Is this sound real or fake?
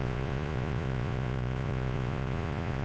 fake